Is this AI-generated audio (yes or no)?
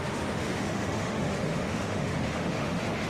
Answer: yes